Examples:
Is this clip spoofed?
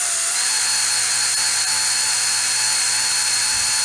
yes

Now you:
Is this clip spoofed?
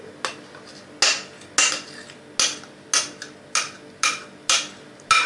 no